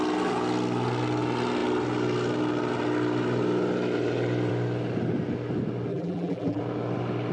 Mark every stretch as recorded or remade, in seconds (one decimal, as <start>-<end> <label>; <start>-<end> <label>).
0.0-5.9 recorded; 5.9-6.6 remade; 6.6-7.3 recorded